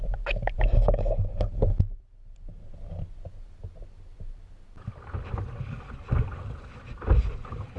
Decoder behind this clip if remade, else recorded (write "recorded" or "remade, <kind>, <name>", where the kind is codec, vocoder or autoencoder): recorded